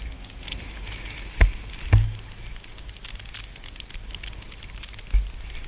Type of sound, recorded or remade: recorded